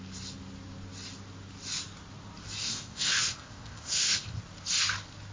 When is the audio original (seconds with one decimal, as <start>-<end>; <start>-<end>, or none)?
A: 0.0-2.6; 4.4-5.3